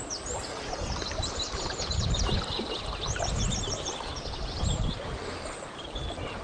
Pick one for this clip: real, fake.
real